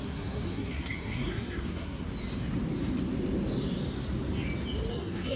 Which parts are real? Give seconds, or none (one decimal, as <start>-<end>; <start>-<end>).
2.1-4.9